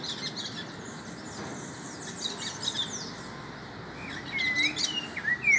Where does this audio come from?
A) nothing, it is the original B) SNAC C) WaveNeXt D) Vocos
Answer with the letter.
A